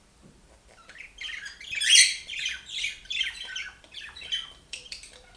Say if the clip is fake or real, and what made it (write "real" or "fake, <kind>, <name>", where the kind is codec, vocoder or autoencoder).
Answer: fake, vocoder, BigVGAN v2